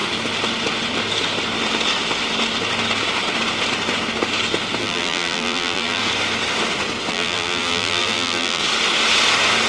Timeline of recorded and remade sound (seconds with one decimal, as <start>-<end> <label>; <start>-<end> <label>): 0.0-4.8 recorded; 4.8-6.0 remade; 6.0-7.1 recorded; 7.1-8.6 remade; 8.6-9.7 recorded